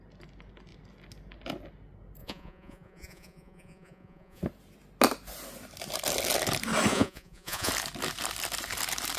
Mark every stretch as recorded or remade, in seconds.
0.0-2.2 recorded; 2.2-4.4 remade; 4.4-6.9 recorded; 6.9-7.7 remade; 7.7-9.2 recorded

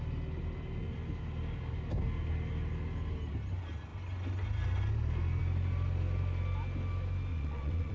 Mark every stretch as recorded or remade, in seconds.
0.0-7.3 recorded; 7.3-7.9 remade